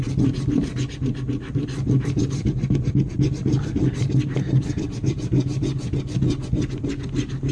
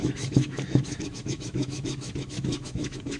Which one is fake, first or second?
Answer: second